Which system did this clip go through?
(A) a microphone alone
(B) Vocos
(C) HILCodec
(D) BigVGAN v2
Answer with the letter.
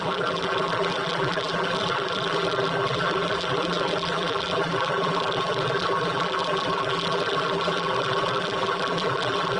D